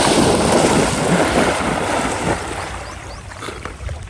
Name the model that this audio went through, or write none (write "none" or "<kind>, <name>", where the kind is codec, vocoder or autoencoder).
vocoder, BigVGAN v2